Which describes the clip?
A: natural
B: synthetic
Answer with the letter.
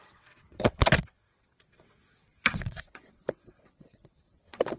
B